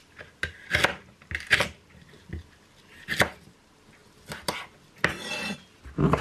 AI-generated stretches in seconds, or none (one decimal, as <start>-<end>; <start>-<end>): none